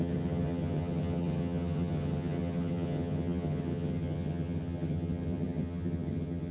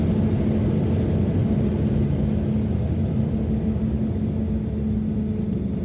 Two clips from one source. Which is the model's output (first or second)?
first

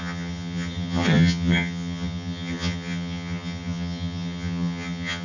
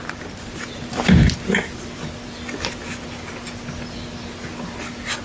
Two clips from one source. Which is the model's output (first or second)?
first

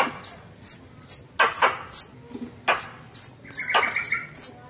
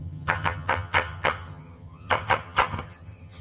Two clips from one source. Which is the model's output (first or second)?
second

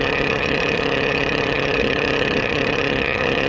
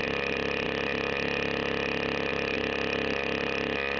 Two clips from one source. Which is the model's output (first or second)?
first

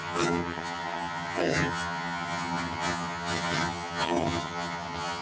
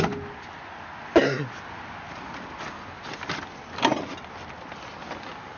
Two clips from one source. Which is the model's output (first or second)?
first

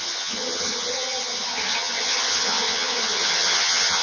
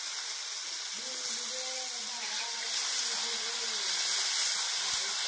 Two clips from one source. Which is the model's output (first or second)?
first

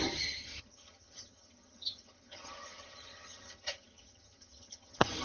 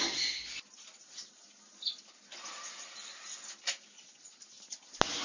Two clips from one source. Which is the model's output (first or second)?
first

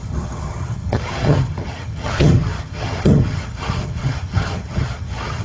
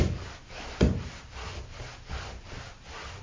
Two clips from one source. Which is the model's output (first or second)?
first